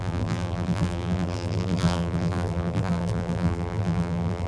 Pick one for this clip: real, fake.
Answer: fake